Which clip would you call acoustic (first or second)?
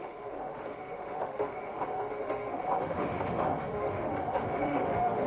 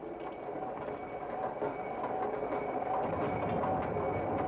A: second